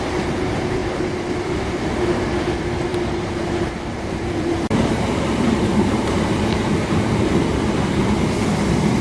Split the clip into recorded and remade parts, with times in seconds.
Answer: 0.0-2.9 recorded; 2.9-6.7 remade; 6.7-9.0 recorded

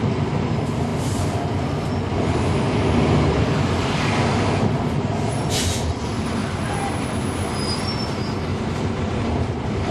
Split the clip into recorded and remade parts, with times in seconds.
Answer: 0.0-6.4 recorded; 6.4-7.0 remade; 7.0-8.5 recorded; 8.5-9.9 remade

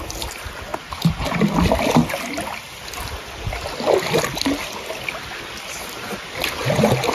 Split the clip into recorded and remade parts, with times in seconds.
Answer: 0.0-7.1 recorded

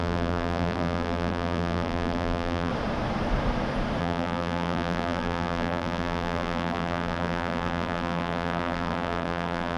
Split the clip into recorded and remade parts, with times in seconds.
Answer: 0.0-2.7 remade; 2.7-4.0 recorded; 4.0-9.8 remade

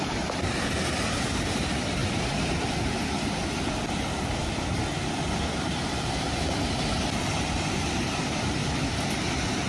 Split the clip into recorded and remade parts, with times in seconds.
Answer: 0.0-9.7 remade

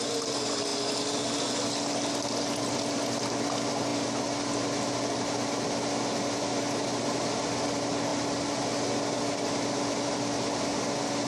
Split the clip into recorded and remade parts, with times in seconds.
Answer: 0.0-11.3 recorded

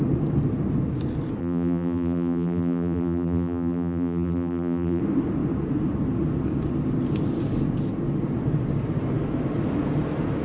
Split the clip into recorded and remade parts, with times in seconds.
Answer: 0.0-1.4 recorded; 1.4-5.0 remade; 5.0-10.4 recorded